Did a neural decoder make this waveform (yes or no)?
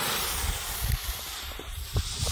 no